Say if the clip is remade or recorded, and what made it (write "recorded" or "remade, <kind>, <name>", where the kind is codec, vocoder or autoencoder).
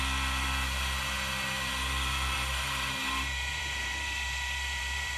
remade, vocoder, BigVGAN v2